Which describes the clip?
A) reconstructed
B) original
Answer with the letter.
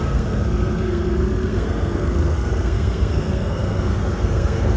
A